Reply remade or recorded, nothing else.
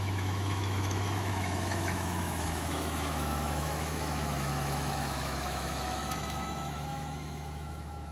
remade